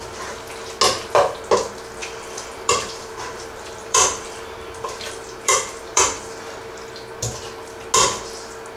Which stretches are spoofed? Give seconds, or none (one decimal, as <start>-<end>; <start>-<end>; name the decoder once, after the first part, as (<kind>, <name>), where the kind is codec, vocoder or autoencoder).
2.0-6.4 (vocoder, BigVGAN v2)